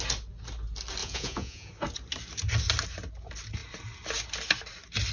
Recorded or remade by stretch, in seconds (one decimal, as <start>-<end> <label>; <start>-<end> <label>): 0.0-1.0 recorded; 1.0-1.7 remade; 1.7-5.1 recorded